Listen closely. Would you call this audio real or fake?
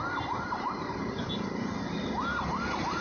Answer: real